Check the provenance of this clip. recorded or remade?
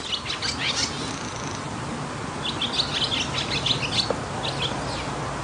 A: recorded